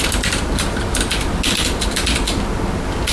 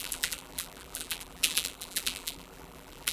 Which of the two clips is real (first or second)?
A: first